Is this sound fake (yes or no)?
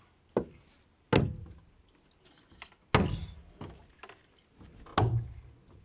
no